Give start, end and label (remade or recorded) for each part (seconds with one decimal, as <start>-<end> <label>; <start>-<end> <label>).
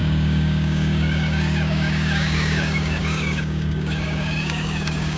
0.0-5.2 remade